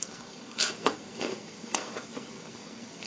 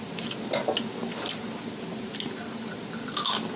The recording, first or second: second